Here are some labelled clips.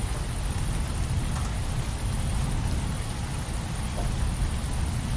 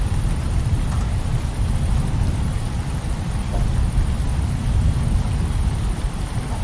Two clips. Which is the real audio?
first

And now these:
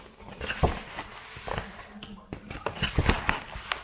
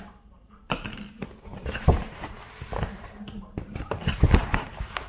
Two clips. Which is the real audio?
first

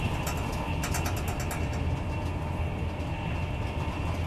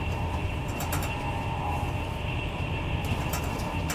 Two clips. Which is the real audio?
first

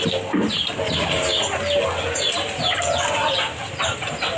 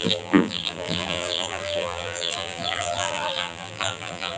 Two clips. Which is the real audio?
first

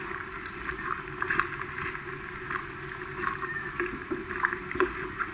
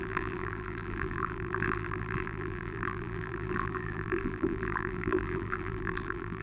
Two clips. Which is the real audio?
first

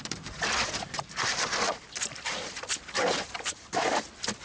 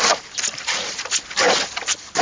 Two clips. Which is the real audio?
second